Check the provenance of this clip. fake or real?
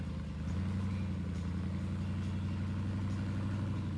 real